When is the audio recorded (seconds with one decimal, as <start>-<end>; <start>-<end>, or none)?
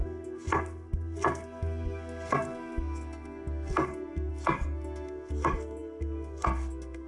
none